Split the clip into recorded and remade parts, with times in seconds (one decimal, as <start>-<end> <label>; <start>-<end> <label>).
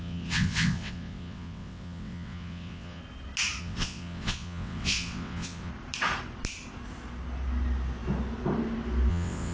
0.0-3.0 remade; 3.0-3.6 recorded; 3.6-5.7 remade; 5.7-9.1 recorded; 9.1-9.5 remade